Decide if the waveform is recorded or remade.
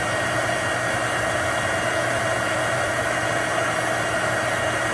recorded